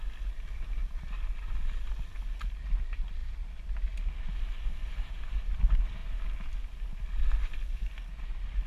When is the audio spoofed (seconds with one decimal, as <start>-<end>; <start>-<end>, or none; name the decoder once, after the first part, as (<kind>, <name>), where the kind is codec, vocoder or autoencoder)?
none